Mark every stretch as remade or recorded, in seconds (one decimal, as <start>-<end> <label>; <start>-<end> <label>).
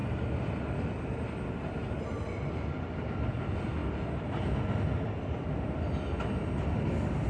0.0-7.3 recorded